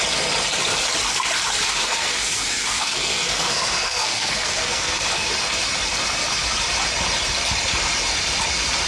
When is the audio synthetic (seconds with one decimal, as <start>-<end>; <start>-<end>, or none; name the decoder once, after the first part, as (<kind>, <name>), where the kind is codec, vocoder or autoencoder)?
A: 1.7-5.3 (codec, SNAC)